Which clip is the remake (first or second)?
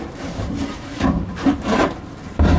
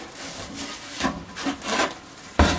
first